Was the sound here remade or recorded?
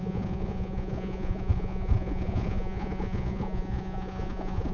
remade